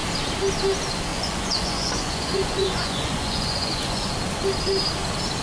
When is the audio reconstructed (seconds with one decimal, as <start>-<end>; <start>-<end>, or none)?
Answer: 1.1-4.1